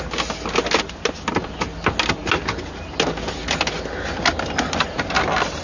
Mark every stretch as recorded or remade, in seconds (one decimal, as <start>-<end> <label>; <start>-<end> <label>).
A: 0.0-5.6 recorded